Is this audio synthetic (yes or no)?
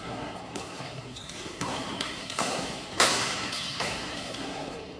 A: yes